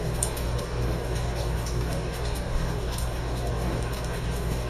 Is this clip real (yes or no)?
no